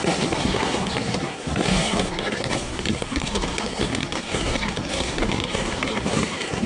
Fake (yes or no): yes